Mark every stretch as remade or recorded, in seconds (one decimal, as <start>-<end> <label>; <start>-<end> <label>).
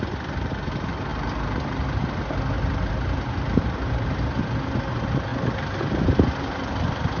0.0-5.3 recorded; 5.3-7.2 remade